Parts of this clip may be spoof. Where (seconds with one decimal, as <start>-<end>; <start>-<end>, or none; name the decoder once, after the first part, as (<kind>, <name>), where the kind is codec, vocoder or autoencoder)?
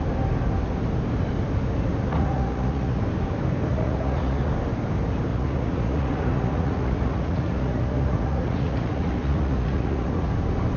2.1-3.0 (vocoder, Vocos); 3.7-4.5; 5.3-10.3